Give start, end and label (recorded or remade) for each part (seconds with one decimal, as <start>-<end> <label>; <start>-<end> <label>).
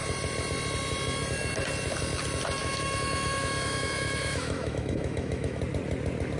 0.0-2.6 recorded; 2.6-5.6 remade; 5.6-6.4 recorded